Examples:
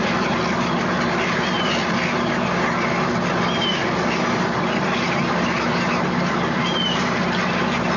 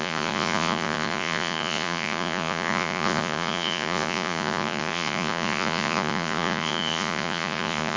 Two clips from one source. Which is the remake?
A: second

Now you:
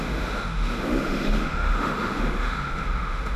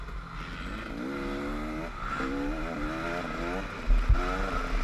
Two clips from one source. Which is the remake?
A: first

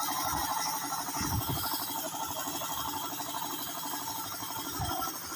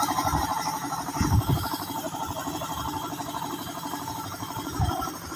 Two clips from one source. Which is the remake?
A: second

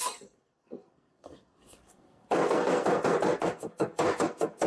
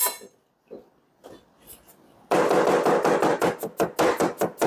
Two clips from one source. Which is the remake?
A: first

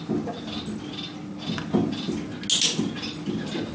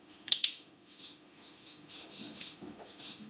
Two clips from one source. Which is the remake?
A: second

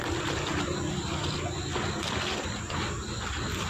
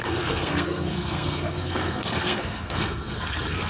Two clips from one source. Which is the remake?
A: second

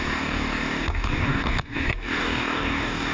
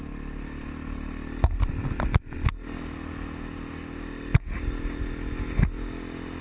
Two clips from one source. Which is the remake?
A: first